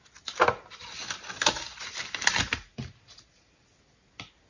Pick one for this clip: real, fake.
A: real